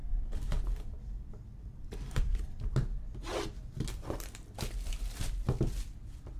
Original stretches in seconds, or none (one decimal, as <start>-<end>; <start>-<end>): 2.5-6.4

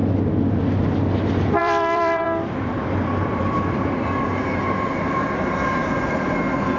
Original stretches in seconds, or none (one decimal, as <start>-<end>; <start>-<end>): 0.0-1.6; 5.4-6.8

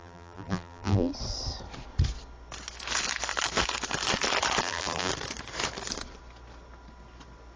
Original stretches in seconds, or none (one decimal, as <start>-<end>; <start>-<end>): 1.1-4.6; 5.1-7.6

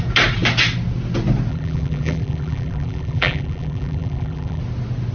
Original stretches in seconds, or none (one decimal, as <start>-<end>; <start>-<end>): 0.0-1.5; 4.6-5.1

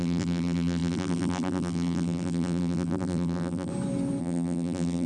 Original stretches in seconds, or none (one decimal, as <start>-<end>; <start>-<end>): 3.7-4.2

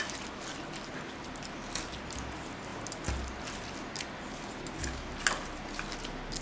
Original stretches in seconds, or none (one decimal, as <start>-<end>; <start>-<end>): 0.0-6.4